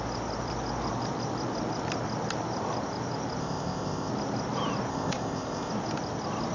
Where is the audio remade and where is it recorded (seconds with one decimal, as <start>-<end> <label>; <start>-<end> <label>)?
0.0-3.4 recorded; 3.4-4.1 remade; 4.1-4.9 recorded; 4.9-5.7 remade; 5.7-6.5 recorded